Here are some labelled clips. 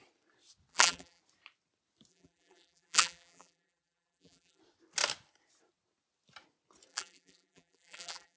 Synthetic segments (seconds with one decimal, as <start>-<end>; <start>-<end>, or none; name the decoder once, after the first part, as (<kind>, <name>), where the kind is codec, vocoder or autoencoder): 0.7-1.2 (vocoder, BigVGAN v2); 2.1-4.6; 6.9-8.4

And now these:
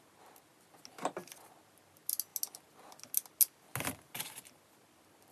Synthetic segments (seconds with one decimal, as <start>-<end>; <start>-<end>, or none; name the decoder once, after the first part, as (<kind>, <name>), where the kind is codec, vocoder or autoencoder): none

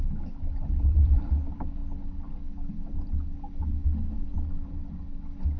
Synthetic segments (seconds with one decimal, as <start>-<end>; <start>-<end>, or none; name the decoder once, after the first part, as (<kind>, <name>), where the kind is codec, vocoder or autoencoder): 0.0-1.8 (vocoder, BigVGAN v2)